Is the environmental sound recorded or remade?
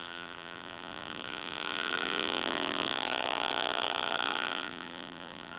remade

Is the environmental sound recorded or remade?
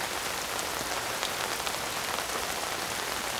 recorded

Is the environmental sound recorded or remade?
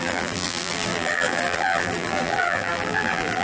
remade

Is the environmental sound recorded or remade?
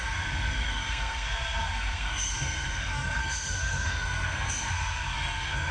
remade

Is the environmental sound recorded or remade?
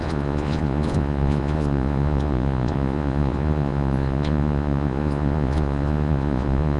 remade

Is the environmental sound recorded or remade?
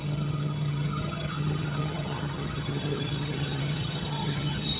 remade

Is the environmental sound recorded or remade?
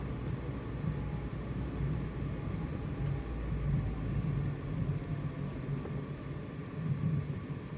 recorded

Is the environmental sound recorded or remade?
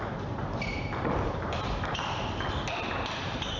remade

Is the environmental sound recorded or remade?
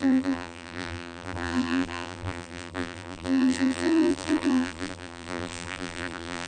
remade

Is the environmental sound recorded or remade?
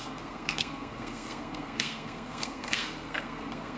remade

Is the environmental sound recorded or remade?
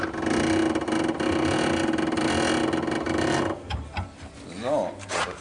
recorded